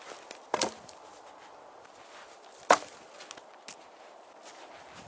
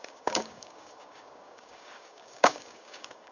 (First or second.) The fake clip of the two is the second